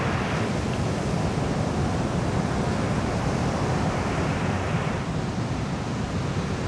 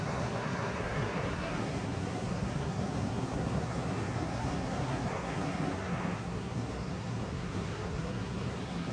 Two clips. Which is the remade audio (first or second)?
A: second